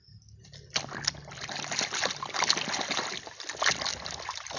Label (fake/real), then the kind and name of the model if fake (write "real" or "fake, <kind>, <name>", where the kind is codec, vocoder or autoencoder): real